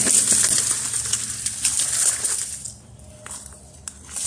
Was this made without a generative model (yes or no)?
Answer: yes